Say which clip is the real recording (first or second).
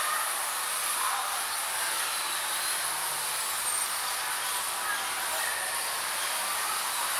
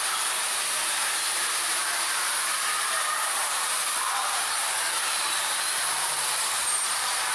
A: first